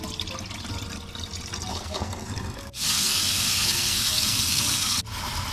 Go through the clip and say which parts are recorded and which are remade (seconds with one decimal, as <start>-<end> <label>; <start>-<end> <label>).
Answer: 0.0-1.7 recorded; 1.7-5.0 remade; 5.0-5.5 recorded